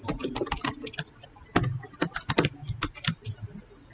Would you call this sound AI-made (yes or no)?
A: no